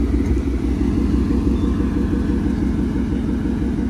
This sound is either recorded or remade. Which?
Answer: recorded